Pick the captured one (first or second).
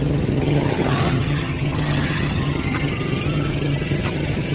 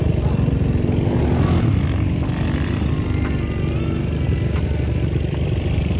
second